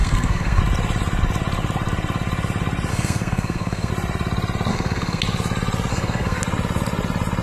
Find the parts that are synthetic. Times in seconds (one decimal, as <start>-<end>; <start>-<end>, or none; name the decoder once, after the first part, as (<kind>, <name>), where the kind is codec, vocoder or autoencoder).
0.0-0.6 (codec, SNAC); 2.9-3.9; 4.7-5.2; 5.9-6.4